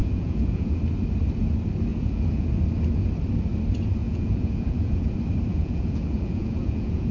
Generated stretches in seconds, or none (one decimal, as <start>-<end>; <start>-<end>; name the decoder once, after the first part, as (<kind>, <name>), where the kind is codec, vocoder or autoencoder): 0.0-0.8 (vocoder, Vocos); 1.9-2.5; 4.0-5.1; 5.5-7.1